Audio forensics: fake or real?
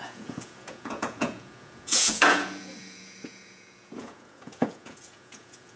fake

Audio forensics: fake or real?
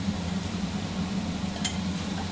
real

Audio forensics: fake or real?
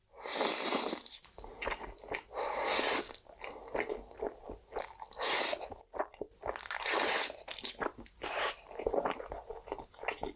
real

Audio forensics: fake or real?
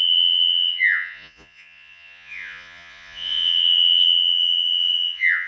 fake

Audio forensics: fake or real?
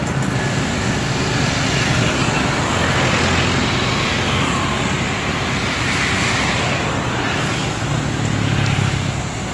real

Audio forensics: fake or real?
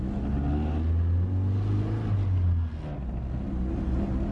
real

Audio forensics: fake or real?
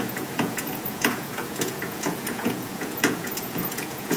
fake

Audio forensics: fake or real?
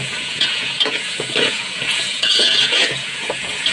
fake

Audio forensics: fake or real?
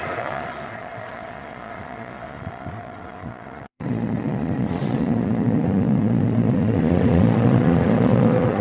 fake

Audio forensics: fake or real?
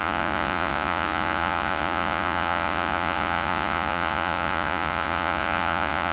fake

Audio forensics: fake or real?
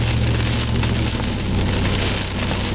real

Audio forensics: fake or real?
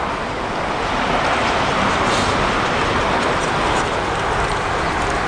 real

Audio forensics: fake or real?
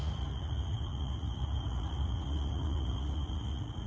fake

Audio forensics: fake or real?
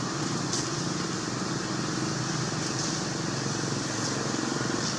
real